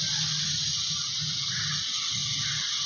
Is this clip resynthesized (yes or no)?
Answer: no